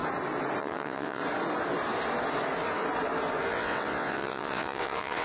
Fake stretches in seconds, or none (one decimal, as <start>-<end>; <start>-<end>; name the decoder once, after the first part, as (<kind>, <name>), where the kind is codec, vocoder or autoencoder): 0.6-1.2 (vocoder, WaveNeXt); 3.5-5.2

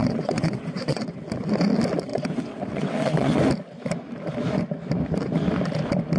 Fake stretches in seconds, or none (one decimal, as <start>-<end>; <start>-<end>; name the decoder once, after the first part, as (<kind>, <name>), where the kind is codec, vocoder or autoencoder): 0.0-1.2 (vocoder, WaveNeXt); 2.1-3.4

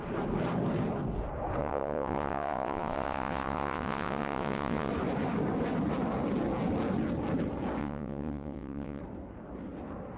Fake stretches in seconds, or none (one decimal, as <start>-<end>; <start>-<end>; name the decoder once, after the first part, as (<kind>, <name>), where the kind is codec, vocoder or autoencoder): 1.6-4.9 (vocoder, WaveNeXt); 7.8-9.0

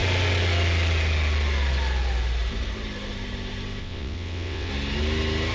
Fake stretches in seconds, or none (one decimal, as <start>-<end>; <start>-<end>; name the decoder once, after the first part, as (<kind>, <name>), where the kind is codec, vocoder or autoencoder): 3.8-4.7 (vocoder, WaveNeXt)

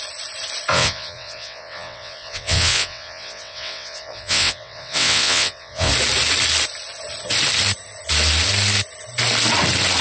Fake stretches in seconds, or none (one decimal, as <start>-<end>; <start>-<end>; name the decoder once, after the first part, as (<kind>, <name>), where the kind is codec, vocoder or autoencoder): 0.7-5.9 (vocoder, WaveNeXt)